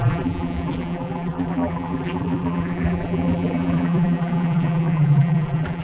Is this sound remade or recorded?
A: remade